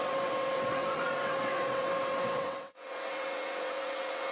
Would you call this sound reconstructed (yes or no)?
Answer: yes